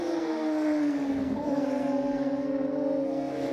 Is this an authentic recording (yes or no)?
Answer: no